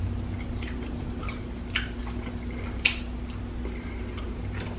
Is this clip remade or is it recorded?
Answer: recorded